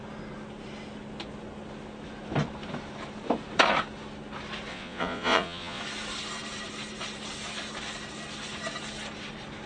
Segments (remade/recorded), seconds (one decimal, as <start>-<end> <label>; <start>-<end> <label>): 0.0-4.7 recorded; 4.7-5.8 remade; 5.8-9.7 recorded